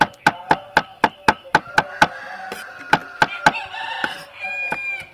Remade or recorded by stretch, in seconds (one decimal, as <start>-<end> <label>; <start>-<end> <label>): 0.0-5.1 recorded